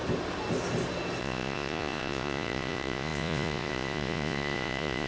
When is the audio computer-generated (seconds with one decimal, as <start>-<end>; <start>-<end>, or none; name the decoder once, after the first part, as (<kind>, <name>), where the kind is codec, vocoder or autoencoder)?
1.2-5.1 (vocoder, Vocos)